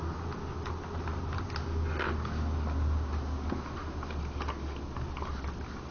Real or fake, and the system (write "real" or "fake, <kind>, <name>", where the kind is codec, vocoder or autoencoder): real